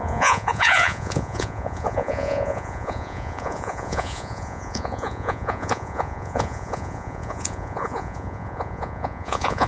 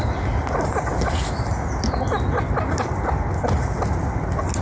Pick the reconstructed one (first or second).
first